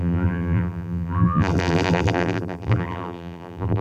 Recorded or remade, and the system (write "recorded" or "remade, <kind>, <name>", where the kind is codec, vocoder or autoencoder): remade, vocoder, BigVGAN v2